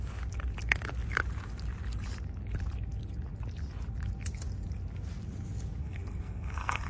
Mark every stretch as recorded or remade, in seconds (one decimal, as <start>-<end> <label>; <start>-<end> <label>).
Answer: 0.0-5.8 recorded; 5.8-6.9 remade